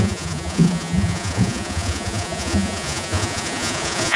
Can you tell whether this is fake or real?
fake